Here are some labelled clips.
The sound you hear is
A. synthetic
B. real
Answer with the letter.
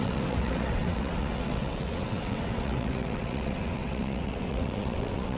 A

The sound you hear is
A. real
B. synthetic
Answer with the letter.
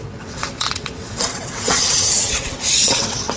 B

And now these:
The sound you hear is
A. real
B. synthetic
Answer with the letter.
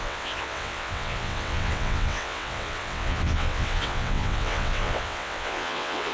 B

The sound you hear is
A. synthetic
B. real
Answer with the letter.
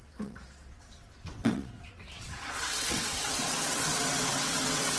A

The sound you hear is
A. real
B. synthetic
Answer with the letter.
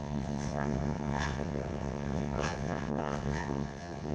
B